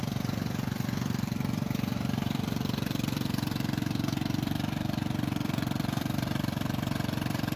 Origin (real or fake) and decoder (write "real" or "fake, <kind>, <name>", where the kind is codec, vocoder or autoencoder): fake, vocoder, BigVGAN v2